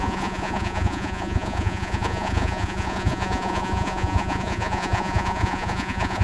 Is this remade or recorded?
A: remade